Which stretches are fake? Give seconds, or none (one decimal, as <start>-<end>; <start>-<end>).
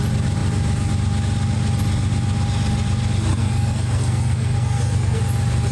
3.3-5.2